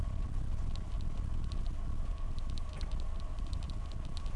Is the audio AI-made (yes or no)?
no